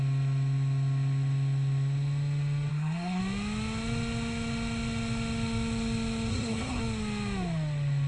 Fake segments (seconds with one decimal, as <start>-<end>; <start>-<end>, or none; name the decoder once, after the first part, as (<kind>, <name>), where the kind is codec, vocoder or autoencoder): 2.7-3.2 (codec, SNAC); 6.3-6.8